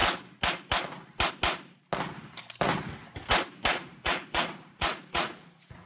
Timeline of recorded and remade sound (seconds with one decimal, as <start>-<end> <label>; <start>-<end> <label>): 0.0-3.7 recorded; 3.7-5.9 remade